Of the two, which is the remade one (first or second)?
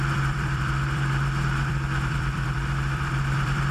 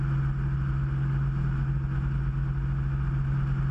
first